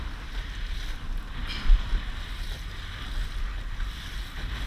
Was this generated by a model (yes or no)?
no